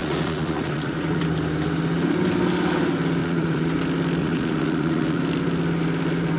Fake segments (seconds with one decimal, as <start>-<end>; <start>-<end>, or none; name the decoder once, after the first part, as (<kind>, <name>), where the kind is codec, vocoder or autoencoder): 0.0-1.2 (vocoder, Vocos); 3.2-3.7; 4.2-5.2